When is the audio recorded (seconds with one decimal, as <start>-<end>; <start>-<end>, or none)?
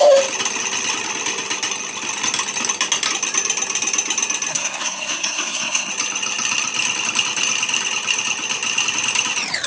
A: 0.0-4.5; 5.9-9.7